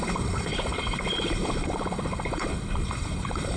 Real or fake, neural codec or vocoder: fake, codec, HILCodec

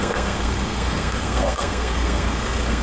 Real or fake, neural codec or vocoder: fake, codec, SNAC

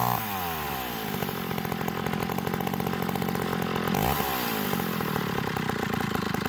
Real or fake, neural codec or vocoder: real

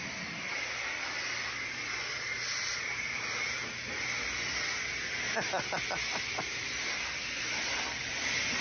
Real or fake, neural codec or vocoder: real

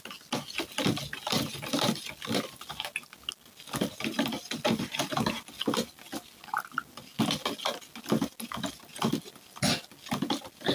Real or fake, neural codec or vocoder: real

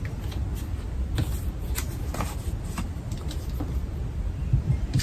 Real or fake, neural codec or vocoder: real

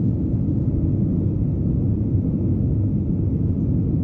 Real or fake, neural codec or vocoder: real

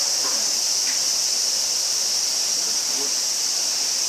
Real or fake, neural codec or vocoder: real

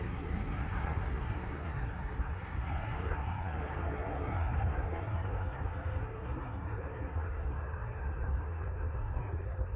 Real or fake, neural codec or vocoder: fake, codec, SNAC